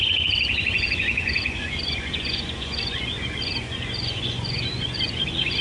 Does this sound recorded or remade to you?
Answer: remade